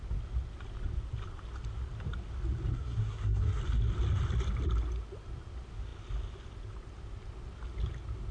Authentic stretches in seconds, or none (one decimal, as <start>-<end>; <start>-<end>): 0.0-2.7; 3.6-8.3